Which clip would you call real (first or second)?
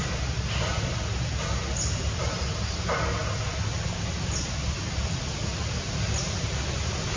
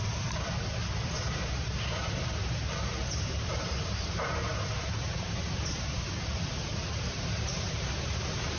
first